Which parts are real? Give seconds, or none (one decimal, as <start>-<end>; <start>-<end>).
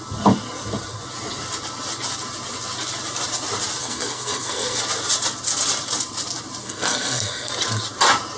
0.0-3.8; 4.8-6.6; 7.5-8.4